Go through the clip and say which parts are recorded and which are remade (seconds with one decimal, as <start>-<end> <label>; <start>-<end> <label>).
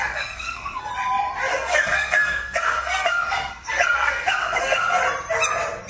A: 0.0-0.9 remade; 0.9-1.5 recorded; 1.5-5.0 remade; 5.0-5.9 recorded